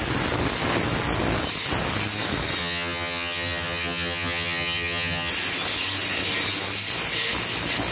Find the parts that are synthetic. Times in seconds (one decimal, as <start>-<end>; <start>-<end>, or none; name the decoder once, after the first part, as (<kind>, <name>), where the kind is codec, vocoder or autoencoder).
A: 2.6-5.3 (vocoder, HiFi-GAN)